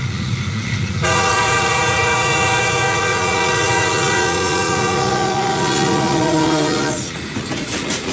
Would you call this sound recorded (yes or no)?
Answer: no